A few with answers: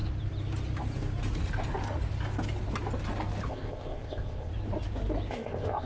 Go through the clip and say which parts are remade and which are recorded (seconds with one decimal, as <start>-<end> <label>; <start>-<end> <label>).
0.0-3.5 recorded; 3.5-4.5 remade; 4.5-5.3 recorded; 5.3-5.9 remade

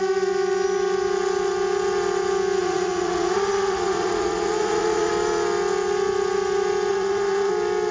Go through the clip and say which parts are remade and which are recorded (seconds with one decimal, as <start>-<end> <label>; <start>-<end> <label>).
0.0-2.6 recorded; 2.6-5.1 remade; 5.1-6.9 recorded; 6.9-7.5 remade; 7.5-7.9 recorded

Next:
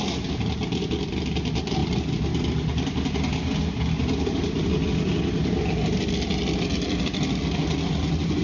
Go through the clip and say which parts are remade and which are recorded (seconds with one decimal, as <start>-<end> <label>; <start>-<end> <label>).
0.0-8.4 recorded